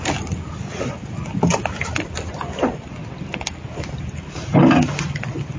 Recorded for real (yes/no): yes